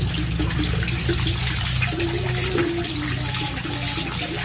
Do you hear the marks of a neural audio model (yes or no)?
no